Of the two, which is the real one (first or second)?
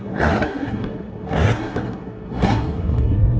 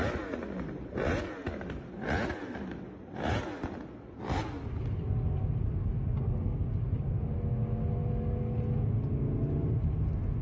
second